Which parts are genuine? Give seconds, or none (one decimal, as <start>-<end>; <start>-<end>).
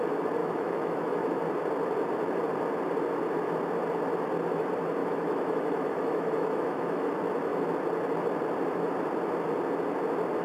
0.0-0.4; 1.4-5.0; 7.1-10.4